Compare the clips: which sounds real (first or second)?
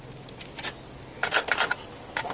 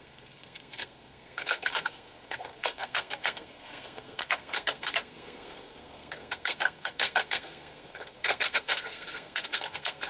first